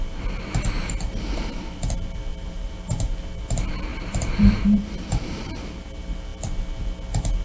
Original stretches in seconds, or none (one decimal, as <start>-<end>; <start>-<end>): 0.0-2.3; 3.4-3.9; 5.6-7.4